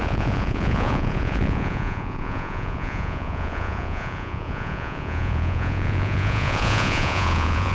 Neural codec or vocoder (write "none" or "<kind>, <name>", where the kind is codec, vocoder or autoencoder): vocoder, Vocos